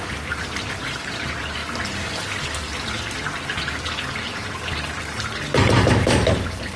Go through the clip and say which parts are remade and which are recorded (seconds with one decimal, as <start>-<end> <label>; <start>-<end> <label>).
0.0-1.6 remade; 1.6-5.6 recorded; 5.6-6.8 remade